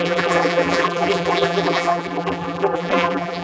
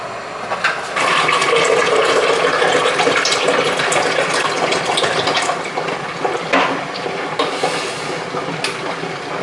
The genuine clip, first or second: second